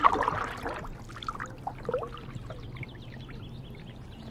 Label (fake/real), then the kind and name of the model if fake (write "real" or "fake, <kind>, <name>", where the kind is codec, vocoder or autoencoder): real